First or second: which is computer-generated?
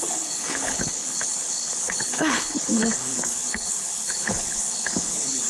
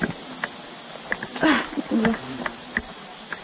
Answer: first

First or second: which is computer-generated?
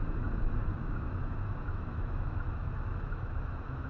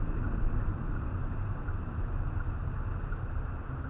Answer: first